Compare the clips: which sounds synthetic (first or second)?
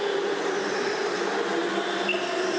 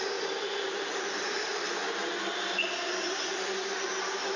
second